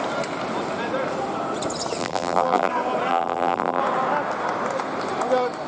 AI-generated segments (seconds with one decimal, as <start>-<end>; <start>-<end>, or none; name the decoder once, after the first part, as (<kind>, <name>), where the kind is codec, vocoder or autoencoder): 2.0-2.7 (vocoder, BigVGAN v2); 3.1-3.8